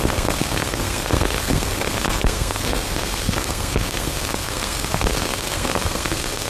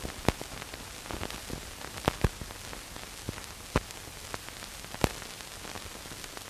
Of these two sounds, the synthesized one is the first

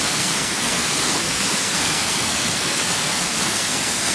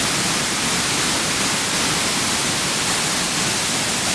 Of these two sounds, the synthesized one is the first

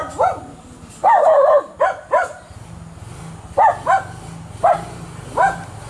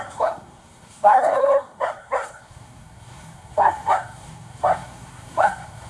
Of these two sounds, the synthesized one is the second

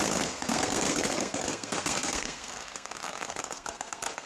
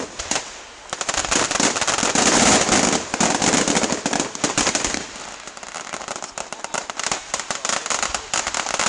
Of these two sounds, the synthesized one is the first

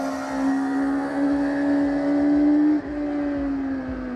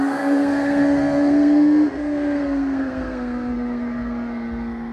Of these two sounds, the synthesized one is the second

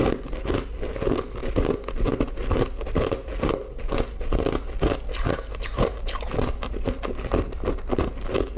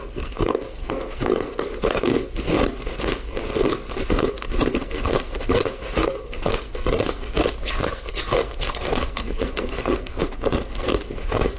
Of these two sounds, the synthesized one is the second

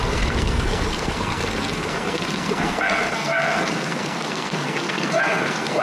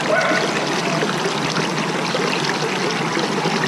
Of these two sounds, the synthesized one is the first